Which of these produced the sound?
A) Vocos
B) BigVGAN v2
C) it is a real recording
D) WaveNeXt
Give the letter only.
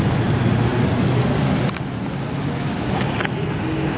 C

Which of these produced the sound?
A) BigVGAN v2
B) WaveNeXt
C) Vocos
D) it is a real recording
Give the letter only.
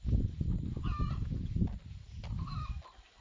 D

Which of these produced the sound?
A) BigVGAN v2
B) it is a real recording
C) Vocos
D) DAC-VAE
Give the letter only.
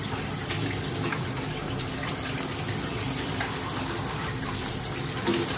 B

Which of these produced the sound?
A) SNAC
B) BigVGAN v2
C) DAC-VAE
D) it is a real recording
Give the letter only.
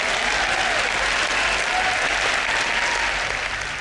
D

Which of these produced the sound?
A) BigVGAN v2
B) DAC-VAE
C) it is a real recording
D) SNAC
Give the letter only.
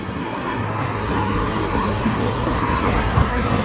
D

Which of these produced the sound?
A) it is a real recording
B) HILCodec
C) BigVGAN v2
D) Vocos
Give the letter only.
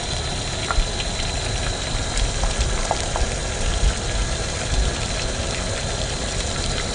A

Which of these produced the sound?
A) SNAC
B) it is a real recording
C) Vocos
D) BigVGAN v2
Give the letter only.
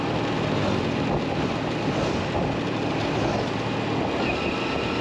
B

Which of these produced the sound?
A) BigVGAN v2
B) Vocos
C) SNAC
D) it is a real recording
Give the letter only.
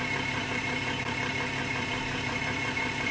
A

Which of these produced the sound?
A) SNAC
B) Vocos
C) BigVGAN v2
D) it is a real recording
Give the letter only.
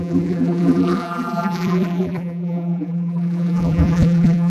C